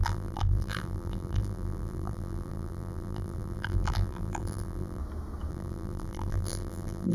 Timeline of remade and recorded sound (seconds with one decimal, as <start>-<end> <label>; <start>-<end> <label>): 0.0-5.0 remade; 5.0-5.5 recorded; 5.5-7.1 remade